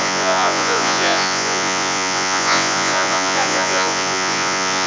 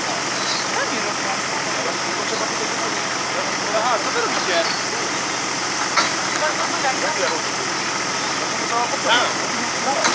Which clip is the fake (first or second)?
first